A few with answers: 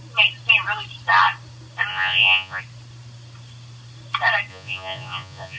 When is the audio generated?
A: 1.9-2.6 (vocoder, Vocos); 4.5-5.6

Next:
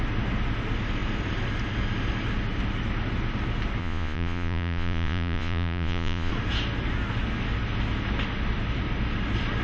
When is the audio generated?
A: 3.8-6.3 (vocoder, Vocos)

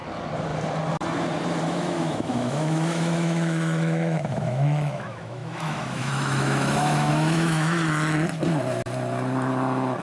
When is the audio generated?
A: 1.6-7.8 (autoencoder, DAC-VAE)

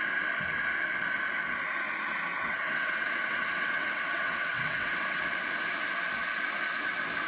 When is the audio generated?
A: 2.3-5.2 (vocoder, WaveNeXt)

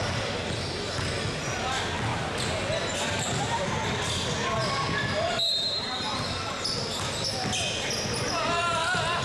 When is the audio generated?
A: 2.1-2.7 (vocoder, BigVGAN v2)

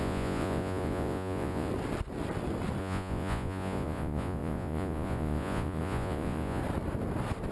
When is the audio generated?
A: 0.0-1.7 (vocoder, Vocos); 2.8-6.6

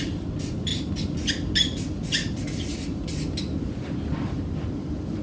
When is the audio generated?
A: none

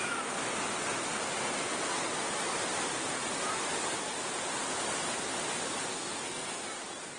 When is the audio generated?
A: 5.9-6.6 (codec, SNAC)